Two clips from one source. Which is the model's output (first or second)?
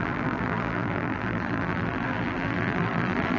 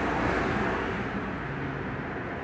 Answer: first